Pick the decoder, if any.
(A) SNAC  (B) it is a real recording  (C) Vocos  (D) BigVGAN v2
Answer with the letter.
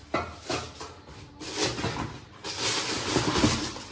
B